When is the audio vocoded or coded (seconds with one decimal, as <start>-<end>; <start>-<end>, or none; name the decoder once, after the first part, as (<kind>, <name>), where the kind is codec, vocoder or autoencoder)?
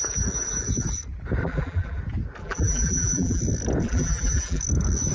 1.4-2.0 (vocoder, BigVGAN v2); 2.4-3.4; 3.8-4.6